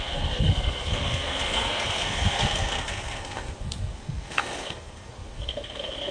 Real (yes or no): no